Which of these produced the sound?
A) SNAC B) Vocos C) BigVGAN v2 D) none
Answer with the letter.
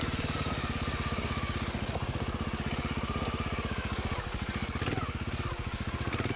D